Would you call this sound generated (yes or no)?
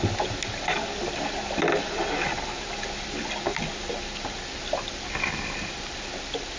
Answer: no